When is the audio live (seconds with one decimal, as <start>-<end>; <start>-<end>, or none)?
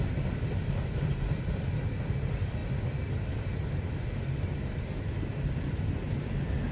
0.0-6.7